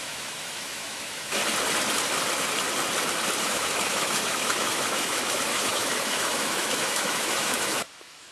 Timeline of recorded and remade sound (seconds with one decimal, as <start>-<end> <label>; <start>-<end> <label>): 0.0-1.4 remade; 1.4-3.4 recorded; 3.4-8.3 remade